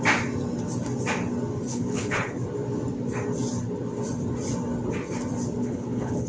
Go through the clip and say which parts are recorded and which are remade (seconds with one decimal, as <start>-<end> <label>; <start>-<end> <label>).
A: 0.0-1.7 recorded; 1.7-2.3 remade; 2.3-5.6 recorded; 5.6-6.3 remade